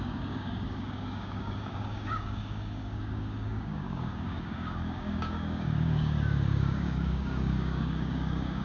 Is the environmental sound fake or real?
fake